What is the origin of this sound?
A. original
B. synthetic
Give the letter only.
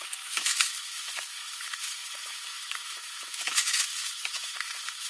B